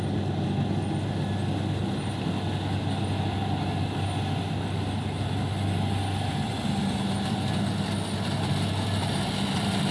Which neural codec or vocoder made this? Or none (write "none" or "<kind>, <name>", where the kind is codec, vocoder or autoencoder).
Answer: none